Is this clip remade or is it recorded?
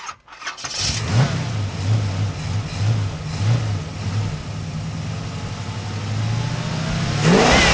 recorded